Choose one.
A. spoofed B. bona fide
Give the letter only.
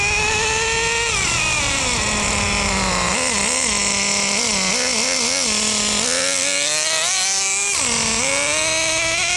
B